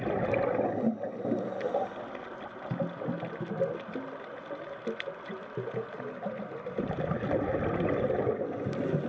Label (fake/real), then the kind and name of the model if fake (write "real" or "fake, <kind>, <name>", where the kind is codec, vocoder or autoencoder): real